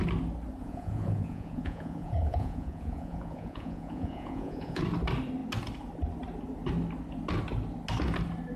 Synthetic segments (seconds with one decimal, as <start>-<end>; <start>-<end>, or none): 0.6-4.8